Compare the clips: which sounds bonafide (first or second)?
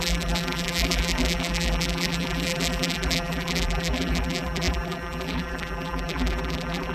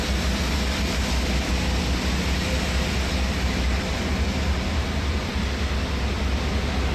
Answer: second